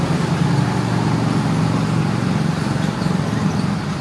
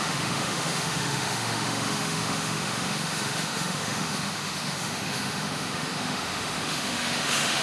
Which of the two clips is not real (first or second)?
second